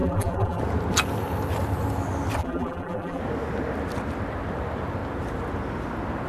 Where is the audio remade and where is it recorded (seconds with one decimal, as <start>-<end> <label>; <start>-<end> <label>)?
0.0-0.6 remade; 0.6-2.4 recorded; 2.4-3.2 remade; 3.2-6.3 recorded